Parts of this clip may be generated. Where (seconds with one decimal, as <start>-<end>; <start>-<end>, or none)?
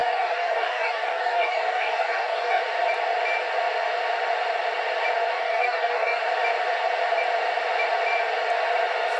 0.0-2.6; 5.3-6.2